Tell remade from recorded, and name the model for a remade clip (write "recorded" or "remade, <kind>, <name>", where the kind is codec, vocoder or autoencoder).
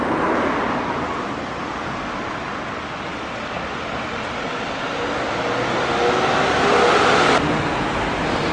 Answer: recorded